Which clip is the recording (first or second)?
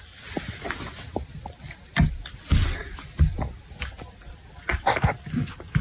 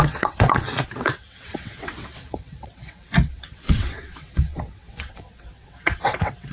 first